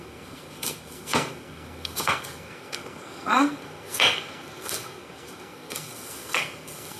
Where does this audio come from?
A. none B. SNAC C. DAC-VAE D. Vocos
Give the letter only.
B